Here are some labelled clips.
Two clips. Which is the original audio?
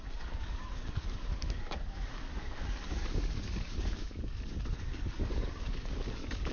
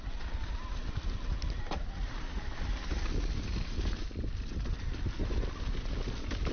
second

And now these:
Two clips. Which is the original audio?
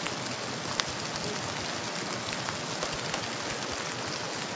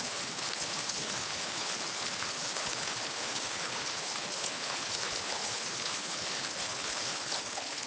first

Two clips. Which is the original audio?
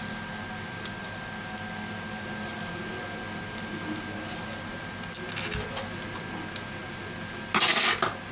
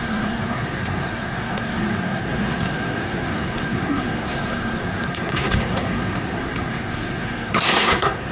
first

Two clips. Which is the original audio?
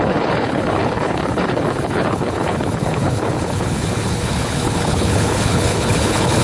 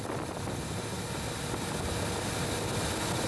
second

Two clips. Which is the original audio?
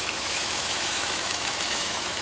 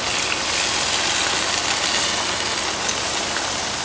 second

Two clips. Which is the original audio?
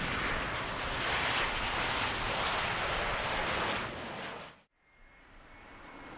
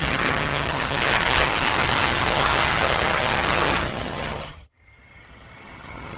first